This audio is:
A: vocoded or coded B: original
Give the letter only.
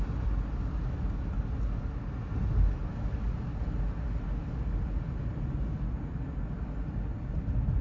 B